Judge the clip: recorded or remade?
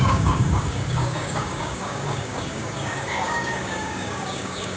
remade